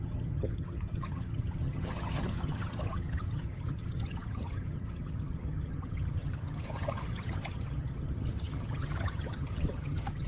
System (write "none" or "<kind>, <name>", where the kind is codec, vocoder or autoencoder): vocoder, HiFi-GAN